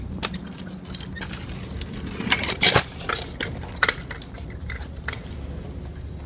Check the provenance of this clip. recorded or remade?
recorded